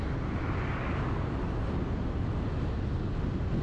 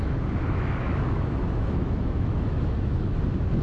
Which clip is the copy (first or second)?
second